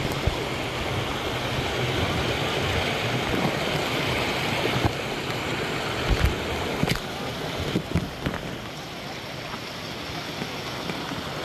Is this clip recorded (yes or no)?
yes